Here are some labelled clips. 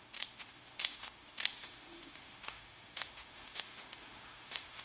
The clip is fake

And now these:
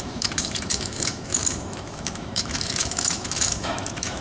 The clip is fake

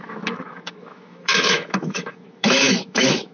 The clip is fake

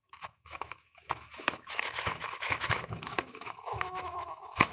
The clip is fake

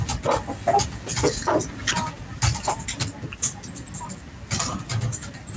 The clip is real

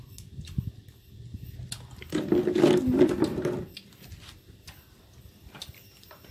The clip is real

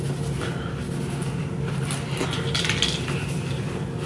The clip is real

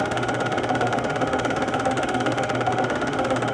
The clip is fake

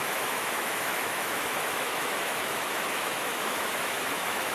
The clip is fake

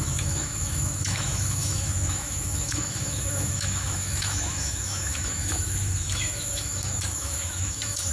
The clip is fake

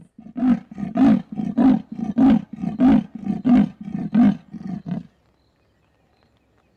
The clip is real